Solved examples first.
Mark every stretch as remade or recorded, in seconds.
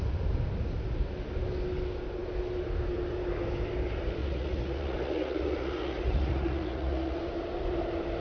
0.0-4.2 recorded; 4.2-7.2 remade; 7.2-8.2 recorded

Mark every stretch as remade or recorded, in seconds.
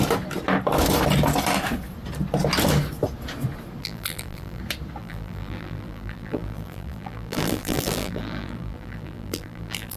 0.0-3.8 recorded; 3.8-4.6 remade; 4.6-5.0 recorded; 5.0-10.0 remade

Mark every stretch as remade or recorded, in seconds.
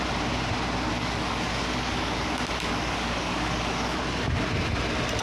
0.0-0.9 recorded; 0.9-4.0 remade; 4.0-5.2 recorded